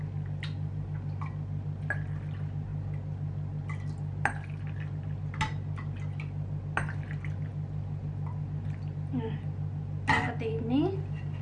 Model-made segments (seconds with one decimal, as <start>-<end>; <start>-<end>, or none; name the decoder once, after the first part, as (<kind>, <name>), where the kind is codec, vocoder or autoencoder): none